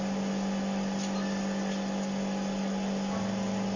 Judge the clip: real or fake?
real